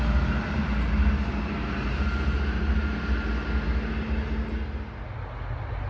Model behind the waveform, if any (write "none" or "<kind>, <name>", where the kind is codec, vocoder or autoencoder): none